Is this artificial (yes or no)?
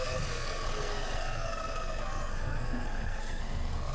yes